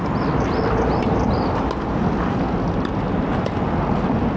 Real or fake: real